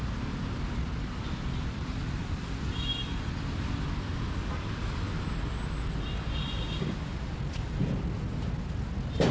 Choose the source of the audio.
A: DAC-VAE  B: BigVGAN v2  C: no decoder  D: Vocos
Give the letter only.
C